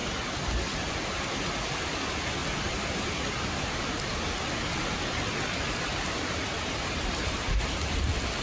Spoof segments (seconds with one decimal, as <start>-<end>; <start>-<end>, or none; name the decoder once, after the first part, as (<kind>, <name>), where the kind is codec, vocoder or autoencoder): 2.4-4.2 (vocoder, BigVGAN v2); 5.9-8.0